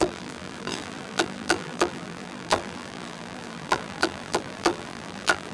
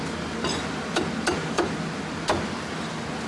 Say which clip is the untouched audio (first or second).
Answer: second